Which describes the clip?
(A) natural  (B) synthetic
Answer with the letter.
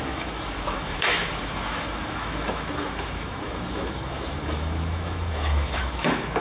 B